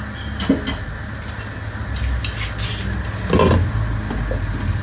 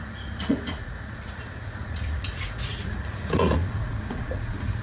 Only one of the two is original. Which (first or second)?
first